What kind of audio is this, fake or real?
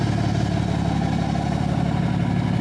real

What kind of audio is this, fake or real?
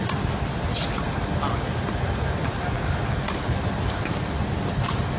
real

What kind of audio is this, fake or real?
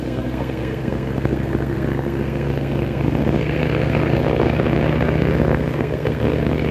fake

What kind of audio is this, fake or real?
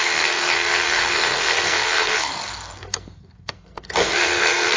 fake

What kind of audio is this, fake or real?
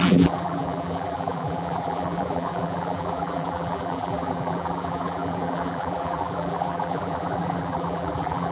fake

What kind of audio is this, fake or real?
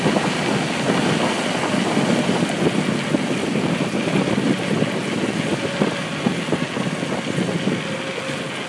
real